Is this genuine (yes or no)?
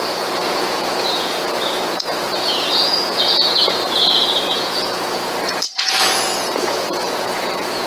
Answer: no